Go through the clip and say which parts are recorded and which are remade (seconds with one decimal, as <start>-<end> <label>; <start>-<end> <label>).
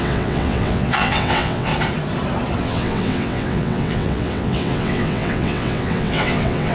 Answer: 0.0-1.7 remade; 1.7-2.6 recorded; 2.6-6.7 remade